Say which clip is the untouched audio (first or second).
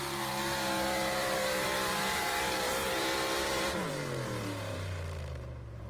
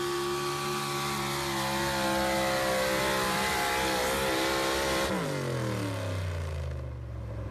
second